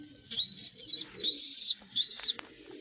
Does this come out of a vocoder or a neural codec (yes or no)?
no